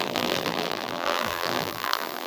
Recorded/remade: remade